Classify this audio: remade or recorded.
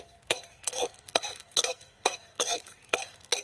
remade